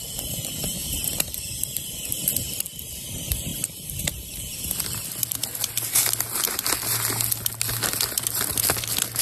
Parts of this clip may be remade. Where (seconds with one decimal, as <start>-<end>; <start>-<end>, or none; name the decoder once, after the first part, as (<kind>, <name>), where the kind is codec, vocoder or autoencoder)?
0.8-1.5 (vocoder, BigVGAN v2); 3.5-4.8